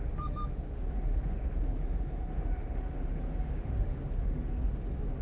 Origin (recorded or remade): remade